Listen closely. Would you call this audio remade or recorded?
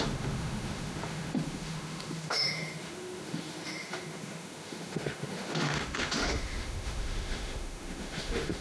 remade